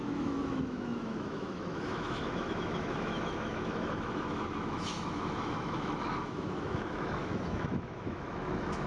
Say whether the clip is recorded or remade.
remade